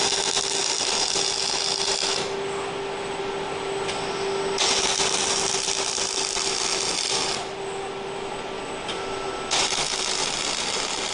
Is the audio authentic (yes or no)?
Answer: yes